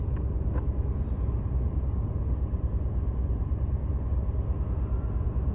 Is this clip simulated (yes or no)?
no